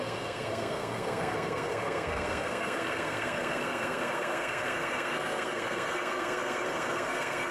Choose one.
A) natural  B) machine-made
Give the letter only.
B